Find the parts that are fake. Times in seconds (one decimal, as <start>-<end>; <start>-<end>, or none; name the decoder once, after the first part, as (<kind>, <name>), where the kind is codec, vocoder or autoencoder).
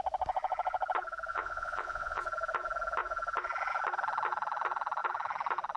1.3-2.2 (vocoder, Vocos)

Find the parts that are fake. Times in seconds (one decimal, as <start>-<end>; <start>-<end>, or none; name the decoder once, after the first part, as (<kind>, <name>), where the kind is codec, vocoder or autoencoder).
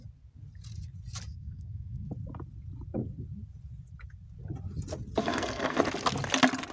1.3-2.1 (codec, SNAC); 5.2-5.8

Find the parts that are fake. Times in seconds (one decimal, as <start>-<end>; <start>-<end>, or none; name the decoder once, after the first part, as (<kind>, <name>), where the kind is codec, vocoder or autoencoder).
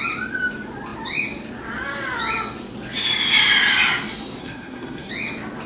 4.4-5.1 (codec, SNAC)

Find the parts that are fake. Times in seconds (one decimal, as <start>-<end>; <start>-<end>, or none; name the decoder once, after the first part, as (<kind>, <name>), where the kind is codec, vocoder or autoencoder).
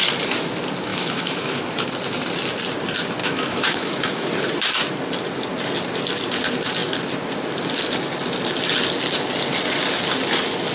0.9-1.6 (autoencoder, DAC-VAE); 3.2-4.3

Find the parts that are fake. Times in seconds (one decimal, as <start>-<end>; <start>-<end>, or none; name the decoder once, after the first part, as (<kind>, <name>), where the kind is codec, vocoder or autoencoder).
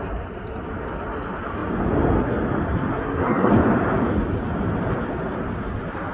2.9-3.5 (codec, SNAC)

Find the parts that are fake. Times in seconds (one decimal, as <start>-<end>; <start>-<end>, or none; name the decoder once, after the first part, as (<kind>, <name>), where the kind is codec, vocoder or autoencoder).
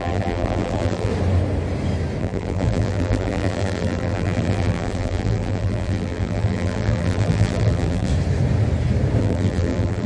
0.0-1.1 (vocoder, BigVGAN v2); 2.2-8.1; 9.2-10.1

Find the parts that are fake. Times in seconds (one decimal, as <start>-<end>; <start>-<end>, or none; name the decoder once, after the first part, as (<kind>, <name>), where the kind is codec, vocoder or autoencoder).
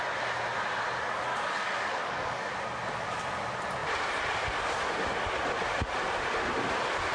1.3-2.5 (codec, DAC)